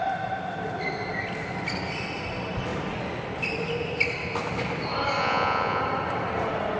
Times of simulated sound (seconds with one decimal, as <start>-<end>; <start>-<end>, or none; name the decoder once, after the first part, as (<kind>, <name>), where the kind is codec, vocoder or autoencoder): 5.2-5.8 (vocoder, Vocos)